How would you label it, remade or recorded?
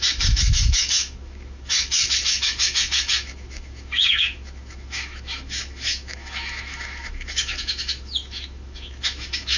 remade